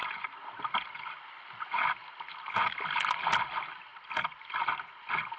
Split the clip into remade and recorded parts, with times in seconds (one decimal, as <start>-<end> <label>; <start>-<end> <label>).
0.0-3.9 recorded; 3.9-5.0 remade; 5.0-5.4 recorded